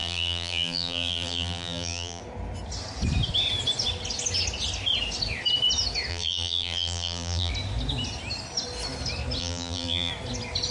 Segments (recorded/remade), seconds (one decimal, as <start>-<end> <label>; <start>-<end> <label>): 0.0-2.2 remade; 2.2-6.1 recorded; 6.1-7.5 remade; 7.5-9.4 recorded; 9.4-10.1 remade; 10.1-10.7 recorded